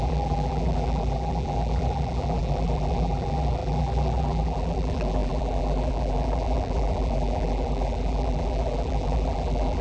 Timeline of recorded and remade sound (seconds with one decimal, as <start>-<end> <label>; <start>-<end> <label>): 0.0-9.8 remade